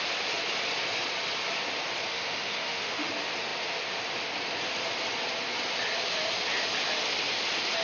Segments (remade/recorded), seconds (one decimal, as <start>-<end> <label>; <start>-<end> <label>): 0.0-2.1 recorded; 2.1-3.1 remade; 3.1-7.8 recorded